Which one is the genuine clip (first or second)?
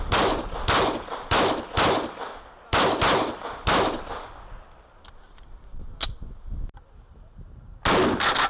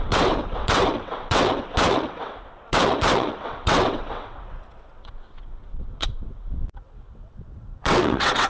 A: first